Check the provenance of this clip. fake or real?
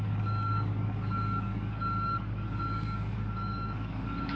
fake